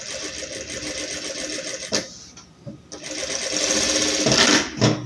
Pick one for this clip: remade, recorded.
recorded